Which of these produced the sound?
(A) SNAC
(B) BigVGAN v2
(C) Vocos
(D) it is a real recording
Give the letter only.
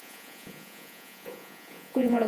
C